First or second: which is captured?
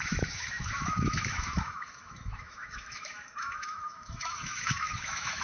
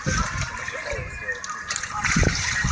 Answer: second